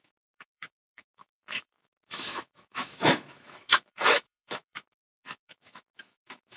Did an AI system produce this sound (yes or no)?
yes